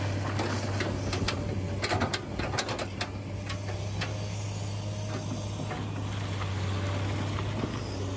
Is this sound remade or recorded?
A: recorded